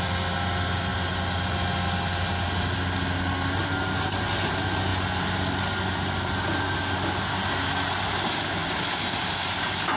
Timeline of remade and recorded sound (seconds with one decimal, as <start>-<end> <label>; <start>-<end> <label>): 0.0-10.0 recorded